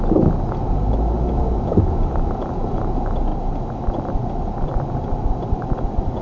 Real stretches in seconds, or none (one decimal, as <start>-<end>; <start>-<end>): 0.0-3.3